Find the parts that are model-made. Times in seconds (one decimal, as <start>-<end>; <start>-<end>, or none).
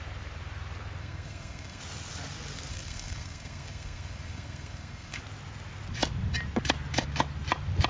1.0-1.8; 2.7-5.2